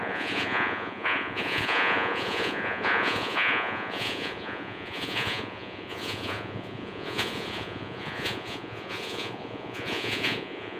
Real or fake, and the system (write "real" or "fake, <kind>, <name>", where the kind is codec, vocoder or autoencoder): fake, vocoder, Vocos